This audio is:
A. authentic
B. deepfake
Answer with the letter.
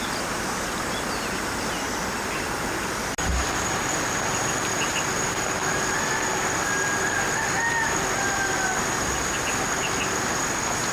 A